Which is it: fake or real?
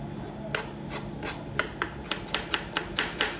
real